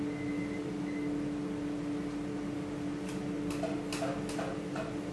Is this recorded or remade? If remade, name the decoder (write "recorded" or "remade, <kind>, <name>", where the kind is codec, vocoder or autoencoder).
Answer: recorded